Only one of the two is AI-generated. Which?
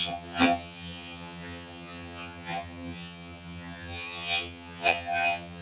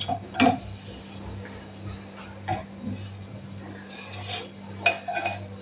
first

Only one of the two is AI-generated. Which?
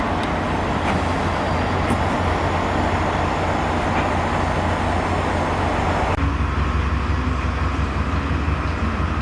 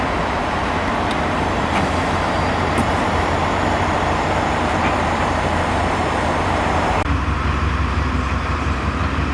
second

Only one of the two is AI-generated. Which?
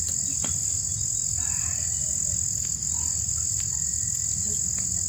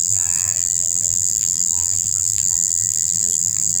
second